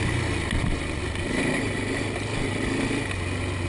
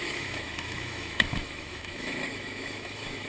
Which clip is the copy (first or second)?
second